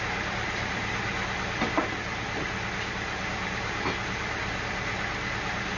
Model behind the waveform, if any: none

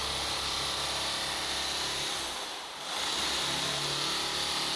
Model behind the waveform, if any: none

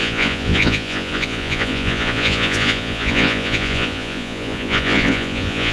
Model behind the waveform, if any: vocoder, Vocos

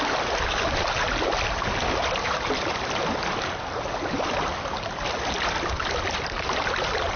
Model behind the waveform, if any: none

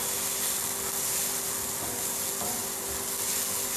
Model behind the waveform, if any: none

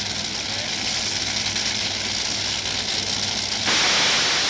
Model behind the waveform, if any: none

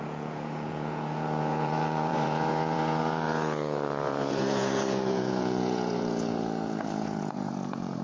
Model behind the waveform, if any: vocoder, Vocos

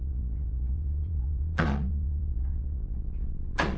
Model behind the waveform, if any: vocoder, Vocos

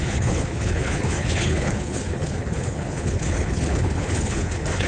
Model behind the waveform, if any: codec, HILCodec